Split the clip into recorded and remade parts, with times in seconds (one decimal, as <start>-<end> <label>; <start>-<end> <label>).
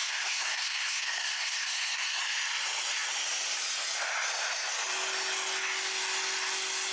0.0-2.2 remade; 2.2-6.9 recorded